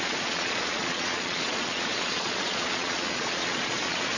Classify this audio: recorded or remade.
remade